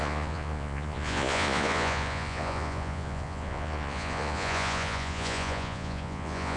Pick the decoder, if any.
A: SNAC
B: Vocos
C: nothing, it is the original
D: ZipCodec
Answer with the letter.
B